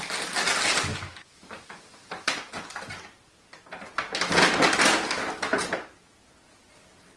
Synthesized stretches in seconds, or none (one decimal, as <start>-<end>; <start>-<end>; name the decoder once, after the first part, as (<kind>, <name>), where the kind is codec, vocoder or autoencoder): 0.9-1.8 (autoencoder, DAC-VAE)